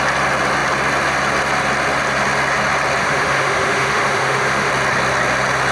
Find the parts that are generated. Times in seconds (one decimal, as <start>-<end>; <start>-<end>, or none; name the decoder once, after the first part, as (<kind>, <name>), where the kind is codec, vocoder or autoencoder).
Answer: 3.0-4.7 (autoencoder, DAC-VAE)

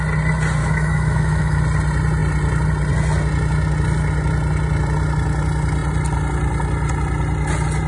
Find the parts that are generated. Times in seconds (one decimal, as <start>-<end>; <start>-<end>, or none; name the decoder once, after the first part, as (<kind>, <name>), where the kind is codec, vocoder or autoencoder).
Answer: 0.6-1.6 (autoencoder, DAC-VAE)